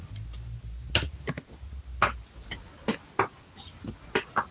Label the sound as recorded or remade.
recorded